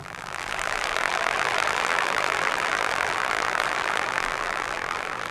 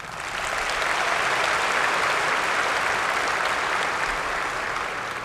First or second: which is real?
second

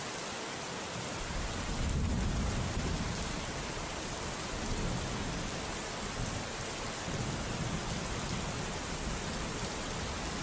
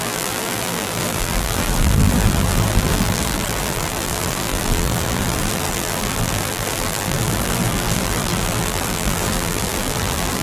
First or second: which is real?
first